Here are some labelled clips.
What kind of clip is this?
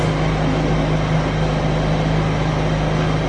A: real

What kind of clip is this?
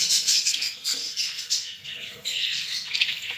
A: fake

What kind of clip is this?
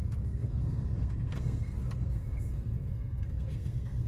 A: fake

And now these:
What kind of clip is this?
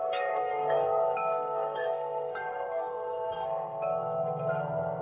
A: fake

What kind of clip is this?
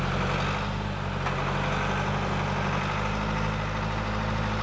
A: real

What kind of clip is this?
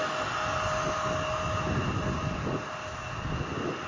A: real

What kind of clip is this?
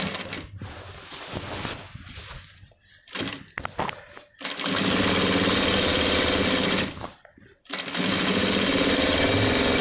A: real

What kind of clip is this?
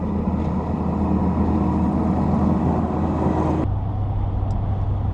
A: real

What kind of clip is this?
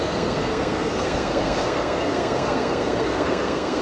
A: fake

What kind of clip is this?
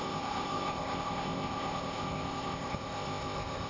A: fake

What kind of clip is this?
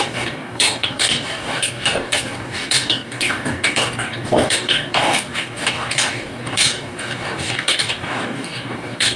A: fake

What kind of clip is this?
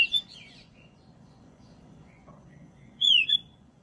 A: fake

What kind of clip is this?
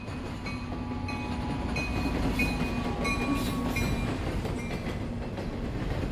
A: real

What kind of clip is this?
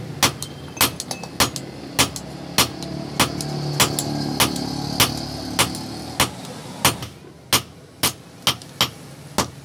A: real